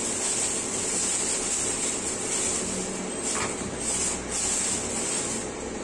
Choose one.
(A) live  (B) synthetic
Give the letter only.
A